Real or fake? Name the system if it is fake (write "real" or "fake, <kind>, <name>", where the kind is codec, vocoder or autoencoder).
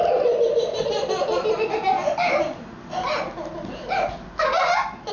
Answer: real